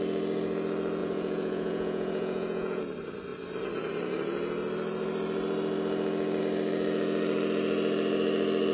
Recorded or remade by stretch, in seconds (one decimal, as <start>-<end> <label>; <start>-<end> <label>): 0.0-1.0 recorded; 1.0-2.8 remade; 2.8-8.7 recorded